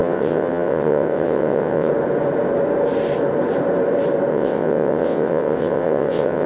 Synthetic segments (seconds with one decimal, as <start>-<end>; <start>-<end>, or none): 0.0-1.9; 4.3-6.5